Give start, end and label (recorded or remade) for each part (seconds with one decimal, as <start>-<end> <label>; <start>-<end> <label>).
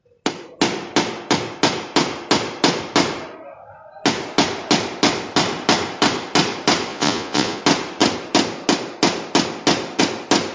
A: 0.0-6.9 recorded; 6.9-7.6 remade; 7.6-10.5 recorded